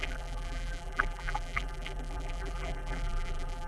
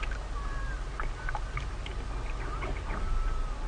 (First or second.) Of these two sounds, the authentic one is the second